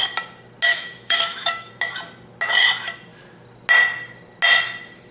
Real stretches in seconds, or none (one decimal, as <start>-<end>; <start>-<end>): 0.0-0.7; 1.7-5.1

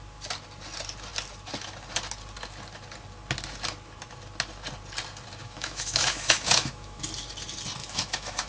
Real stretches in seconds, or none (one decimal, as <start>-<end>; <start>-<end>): 0.0-5.4; 7.0-7.8

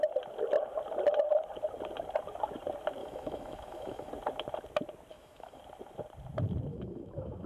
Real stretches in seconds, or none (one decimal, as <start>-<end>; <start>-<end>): 0.0-3.0; 4.1-5.1; 5.6-6.7